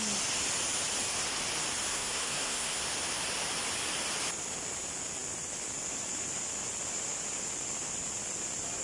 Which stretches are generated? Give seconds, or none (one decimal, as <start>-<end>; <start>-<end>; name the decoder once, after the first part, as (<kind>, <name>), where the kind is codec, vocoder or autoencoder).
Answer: 1.9-2.8 (codec, SNAC)